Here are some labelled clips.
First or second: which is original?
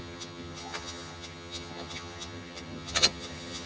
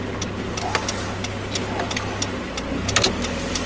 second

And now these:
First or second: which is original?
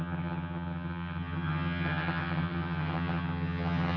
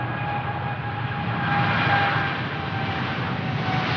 second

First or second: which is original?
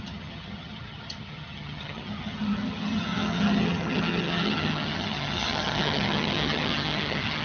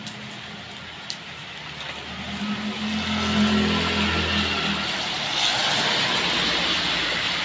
second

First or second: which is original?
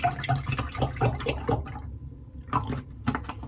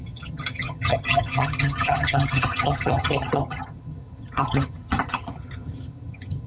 first